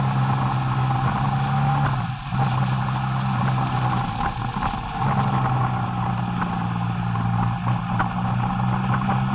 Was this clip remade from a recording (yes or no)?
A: no